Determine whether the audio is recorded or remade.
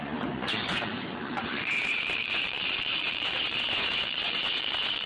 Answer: remade